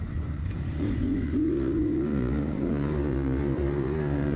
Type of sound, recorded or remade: remade